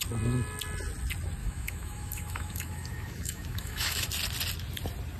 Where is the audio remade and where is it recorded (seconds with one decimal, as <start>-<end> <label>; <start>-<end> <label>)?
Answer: 0.0-1.4 recorded; 1.4-4.1 remade; 4.1-5.2 recorded